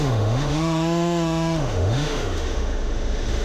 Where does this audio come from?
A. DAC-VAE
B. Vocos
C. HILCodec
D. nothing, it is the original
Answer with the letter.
A